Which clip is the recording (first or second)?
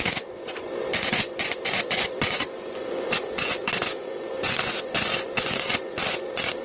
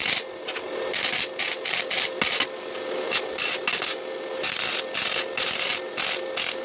second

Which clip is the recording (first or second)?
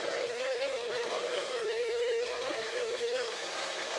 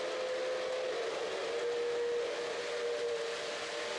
second